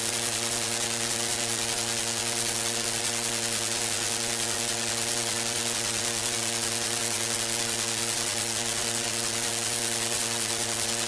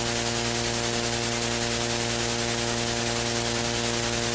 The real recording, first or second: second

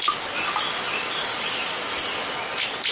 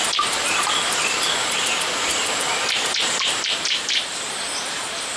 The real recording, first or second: first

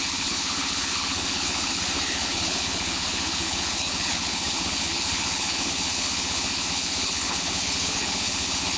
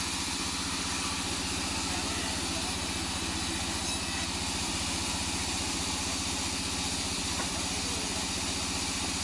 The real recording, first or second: second